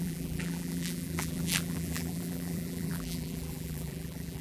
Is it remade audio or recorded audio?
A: remade